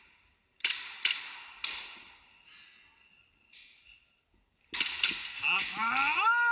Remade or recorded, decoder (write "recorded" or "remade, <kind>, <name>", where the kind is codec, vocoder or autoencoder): recorded